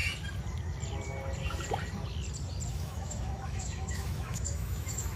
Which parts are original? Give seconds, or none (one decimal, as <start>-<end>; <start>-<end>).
0.0-2.7